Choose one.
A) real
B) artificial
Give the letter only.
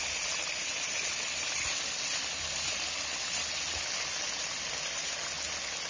A